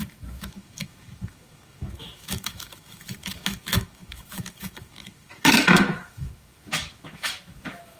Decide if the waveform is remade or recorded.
remade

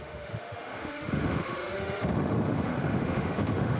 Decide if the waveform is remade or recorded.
remade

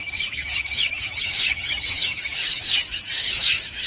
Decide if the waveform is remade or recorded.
remade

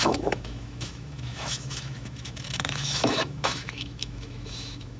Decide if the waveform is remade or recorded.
remade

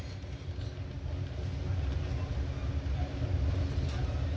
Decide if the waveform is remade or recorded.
recorded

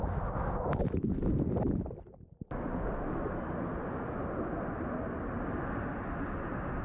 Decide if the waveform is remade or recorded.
recorded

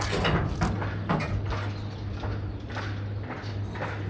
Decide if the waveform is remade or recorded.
recorded